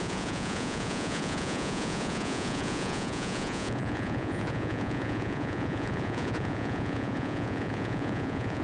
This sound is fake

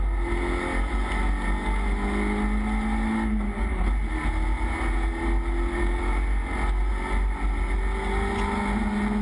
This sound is real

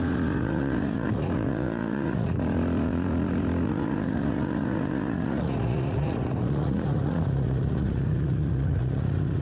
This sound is fake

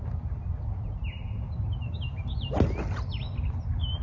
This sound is real